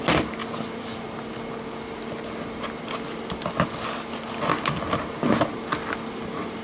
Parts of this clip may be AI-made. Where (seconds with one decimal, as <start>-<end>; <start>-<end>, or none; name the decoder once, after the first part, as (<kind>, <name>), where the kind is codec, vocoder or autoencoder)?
none